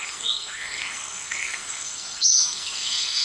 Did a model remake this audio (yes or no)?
yes